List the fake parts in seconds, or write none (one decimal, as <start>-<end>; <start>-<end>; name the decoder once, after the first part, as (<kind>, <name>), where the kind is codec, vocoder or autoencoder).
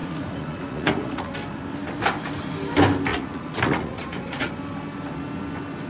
0.0-1.3 (vocoder, Vocos); 3.1-4.5